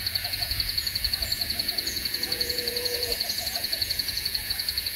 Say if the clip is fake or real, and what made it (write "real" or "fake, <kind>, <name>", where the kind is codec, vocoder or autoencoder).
fake, vocoder, Vocos